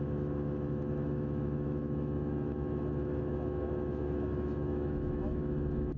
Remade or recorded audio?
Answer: remade